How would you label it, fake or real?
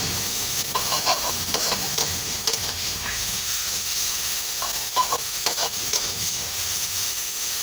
fake